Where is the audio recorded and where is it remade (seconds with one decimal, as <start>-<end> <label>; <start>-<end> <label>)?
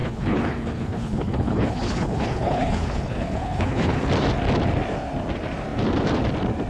0.0-4.0 remade; 4.0-6.7 recorded